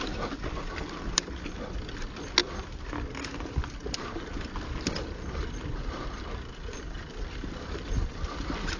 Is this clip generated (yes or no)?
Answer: no